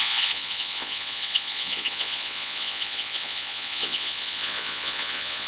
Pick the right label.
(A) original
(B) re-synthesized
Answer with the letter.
B